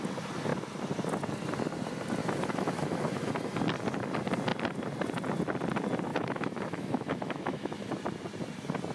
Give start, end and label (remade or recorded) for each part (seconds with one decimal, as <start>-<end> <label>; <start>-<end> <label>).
0.0-2.2 recorded; 2.2-3.3 remade; 3.3-6.1 recorded; 6.1-7.9 remade; 7.9-8.9 recorded